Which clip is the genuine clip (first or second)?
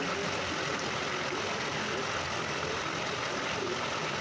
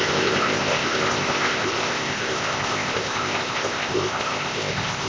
first